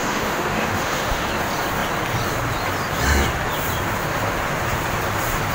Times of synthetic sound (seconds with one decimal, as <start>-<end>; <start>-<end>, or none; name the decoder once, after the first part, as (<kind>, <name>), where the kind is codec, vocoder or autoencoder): 0.0-1.3 (autoencoder, DAC-VAE)